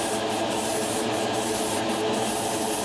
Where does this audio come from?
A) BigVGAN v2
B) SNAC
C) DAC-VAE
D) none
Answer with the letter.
D